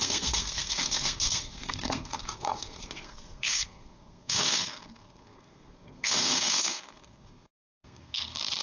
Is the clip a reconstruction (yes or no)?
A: yes